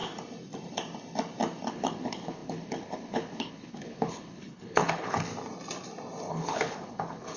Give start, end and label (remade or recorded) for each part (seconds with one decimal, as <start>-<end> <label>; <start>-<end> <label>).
0.0-1.7 recorded; 1.7-5.3 remade; 5.3-6.3 recorded; 6.3-7.4 remade